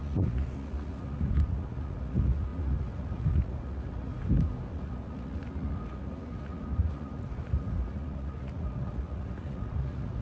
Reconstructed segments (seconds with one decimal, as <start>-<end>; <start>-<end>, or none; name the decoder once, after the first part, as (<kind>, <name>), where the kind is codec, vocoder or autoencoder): 0.0-4.1 (vocoder, Vocos); 4.7-10.2